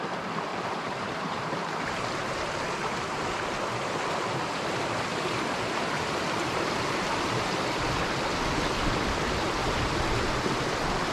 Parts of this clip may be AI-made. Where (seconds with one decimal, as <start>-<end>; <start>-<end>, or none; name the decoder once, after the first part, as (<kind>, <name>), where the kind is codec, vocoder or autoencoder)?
0.5-3.3 (vocoder, BigVGAN v2); 5.1-7.6; 9.6-10.3